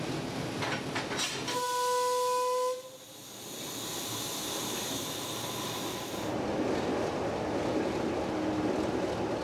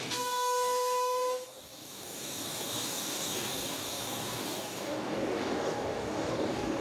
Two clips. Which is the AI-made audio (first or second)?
second